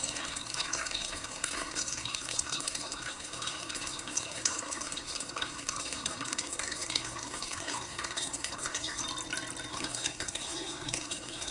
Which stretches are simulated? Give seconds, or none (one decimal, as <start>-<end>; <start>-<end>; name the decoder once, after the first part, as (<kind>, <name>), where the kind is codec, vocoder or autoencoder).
0.0-9.0 (codec, SNAC); 9.7-11.5